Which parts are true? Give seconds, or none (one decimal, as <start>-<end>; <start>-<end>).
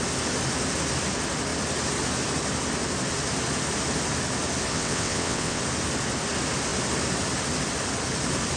0.0-4.7; 5.6-8.6